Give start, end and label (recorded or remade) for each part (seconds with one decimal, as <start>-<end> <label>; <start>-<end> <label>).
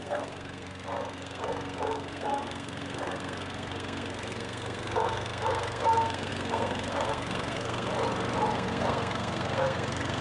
0.0-7.9 remade; 7.9-8.5 recorded; 8.5-10.2 remade